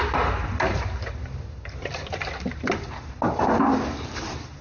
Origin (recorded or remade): recorded